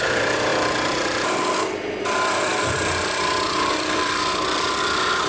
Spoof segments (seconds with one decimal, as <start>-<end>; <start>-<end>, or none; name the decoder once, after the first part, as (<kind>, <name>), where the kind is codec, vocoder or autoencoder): 0.0-5.3 (vocoder, BigVGAN v2)